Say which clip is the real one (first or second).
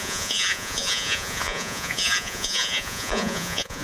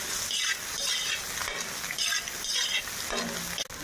second